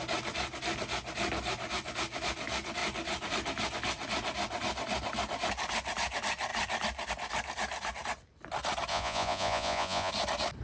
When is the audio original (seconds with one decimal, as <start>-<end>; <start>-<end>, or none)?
0.0-8.9; 10.1-10.6